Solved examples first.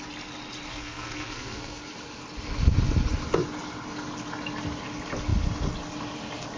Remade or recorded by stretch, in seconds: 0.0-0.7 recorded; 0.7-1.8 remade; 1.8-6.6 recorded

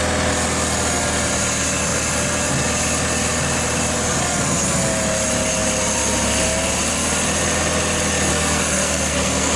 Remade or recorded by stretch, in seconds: 0.0-8.3 recorded; 8.3-9.6 remade

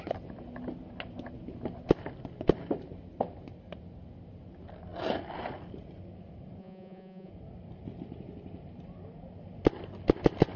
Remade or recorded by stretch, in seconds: 0.0-6.6 recorded; 6.6-7.3 remade; 7.3-10.6 recorded

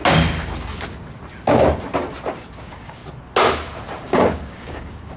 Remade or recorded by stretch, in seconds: 0.0-2.6 recorded; 2.6-3.0 remade; 3.0-4.0 recorded; 4.0-5.2 remade

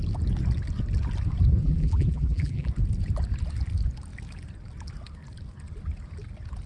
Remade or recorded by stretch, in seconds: 0.0-1.6 recorded; 1.6-2.7 remade; 2.7-6.7 recorded

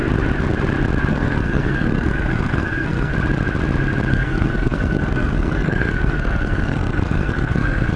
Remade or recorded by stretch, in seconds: 0.0-1.1 recorded; 1.1-3.1 remade; 3.1-4.1 recorded; 4.1-8.0 remade